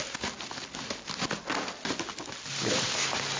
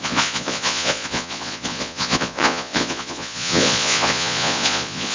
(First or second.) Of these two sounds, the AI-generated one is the second